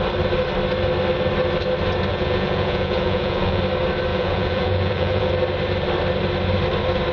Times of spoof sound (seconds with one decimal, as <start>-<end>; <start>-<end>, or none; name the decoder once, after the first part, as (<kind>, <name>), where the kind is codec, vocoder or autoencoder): 2.1-3.6 (vocoder, Vocos); 4.1-5.3